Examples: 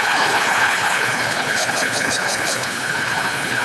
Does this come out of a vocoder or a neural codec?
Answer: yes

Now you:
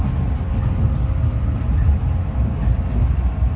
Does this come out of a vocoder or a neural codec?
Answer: no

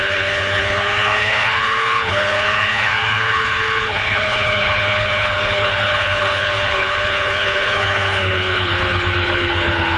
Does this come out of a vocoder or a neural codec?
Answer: yes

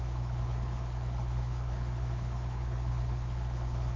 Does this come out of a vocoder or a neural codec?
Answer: yes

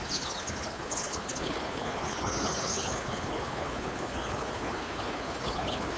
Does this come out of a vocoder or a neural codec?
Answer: yes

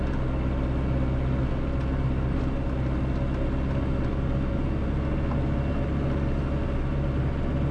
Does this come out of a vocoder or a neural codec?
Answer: no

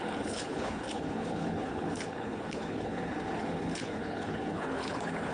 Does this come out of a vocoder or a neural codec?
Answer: yes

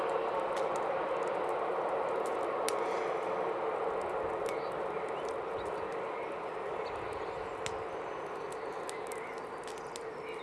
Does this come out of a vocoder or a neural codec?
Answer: no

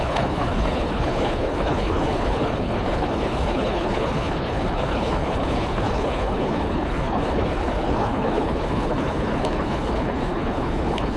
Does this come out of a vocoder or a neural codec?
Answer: yes